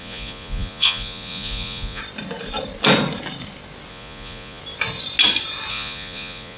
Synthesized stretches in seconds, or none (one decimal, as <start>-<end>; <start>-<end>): 0.0-2.0; 3.9-4.6; 5.7-6.6